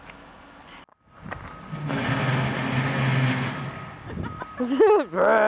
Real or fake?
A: real